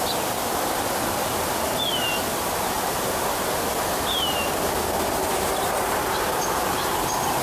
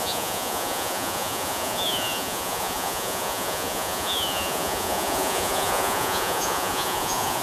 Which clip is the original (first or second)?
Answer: first